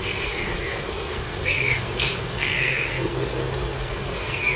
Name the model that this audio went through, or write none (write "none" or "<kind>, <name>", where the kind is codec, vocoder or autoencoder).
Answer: codec, SNAC